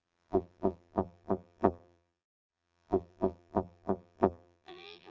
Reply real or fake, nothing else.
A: fake